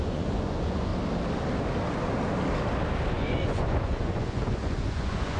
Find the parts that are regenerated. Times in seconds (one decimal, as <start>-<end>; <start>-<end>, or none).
0.0-0.9; 3.1-5.4